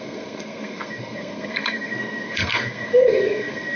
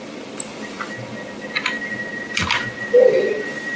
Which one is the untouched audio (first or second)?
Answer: second